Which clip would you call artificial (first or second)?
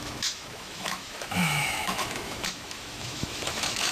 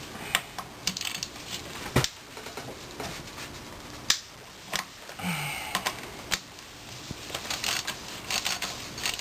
first